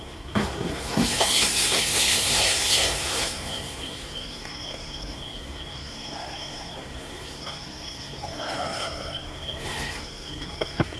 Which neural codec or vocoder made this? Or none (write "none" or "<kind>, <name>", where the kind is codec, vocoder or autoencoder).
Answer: codec, SNAC